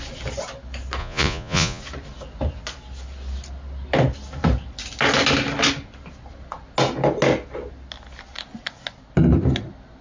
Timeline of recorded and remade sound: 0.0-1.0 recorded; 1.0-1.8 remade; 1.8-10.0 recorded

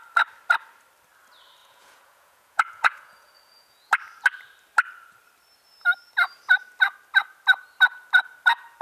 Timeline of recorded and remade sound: 0.0-1.6 recorded; 1.6-3.9 remade; 3.9-8.8 recorded

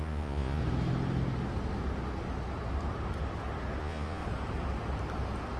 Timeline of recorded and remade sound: 0.0-0.6 remade; 0.6-3.8 recorded; 3.8-4.2 remade; 4.2-5.6 recorded